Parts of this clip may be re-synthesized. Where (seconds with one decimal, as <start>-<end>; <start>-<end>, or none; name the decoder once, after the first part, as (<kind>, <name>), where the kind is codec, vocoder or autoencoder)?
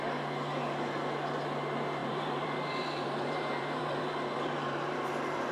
2.0-5.5 (vocoder, BigVGAN v2)